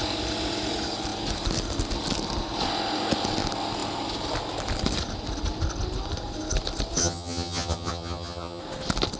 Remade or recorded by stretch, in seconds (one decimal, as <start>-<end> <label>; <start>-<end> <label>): 0.0-7.0 recorded; 7.0-8.6 remade; 8.6-9.2 recorded